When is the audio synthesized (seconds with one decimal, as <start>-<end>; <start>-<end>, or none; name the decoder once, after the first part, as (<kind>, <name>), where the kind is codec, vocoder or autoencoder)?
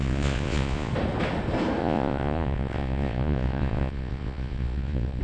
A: 0.0-0.9 (vocoder, Vocos); 1.8-5.2